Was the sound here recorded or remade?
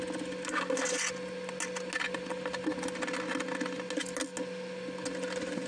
recorded